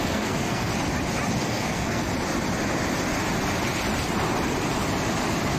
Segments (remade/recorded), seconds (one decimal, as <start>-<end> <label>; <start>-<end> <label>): 0.0-0.7 remade; 0.7-1.4 recorded; 1.4-2.0 remade; 2.0-5.6 recorded